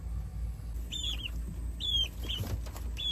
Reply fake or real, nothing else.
real